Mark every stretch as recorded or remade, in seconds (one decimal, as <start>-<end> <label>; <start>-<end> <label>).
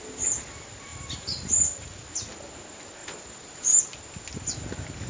0.0-0.9 recorded; 0.9-1.9 remade; 1.9-3.0 recorded; 3.0-3.8 remade; 3.8-5.1 recorded